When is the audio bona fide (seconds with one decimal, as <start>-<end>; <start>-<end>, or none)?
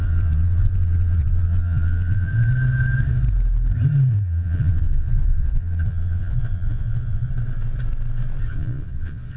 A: 2.5-4.1; 7.3-8.4